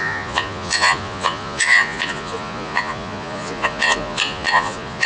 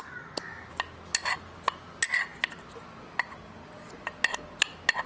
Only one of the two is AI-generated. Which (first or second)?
first